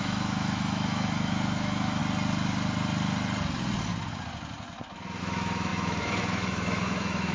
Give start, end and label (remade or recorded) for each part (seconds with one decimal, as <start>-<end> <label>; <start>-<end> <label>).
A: 0.0-2.0 remade; 2.0-5.2 recorded; 5.2-7.3 remade